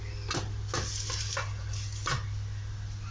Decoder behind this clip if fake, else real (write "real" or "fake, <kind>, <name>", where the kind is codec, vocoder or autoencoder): real